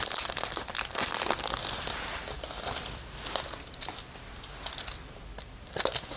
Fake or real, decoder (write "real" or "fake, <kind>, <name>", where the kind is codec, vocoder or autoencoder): real